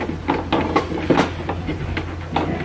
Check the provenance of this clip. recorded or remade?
recorded